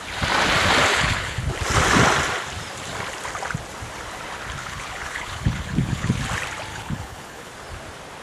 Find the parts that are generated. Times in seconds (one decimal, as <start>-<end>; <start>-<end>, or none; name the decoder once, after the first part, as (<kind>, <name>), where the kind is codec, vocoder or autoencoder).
0.9-1.5 (codec, HILCodec); 4.6-6.2; 6.7-7.5